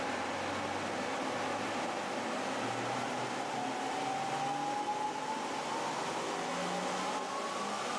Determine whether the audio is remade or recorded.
recorded